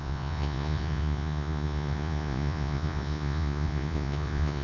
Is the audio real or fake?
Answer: fake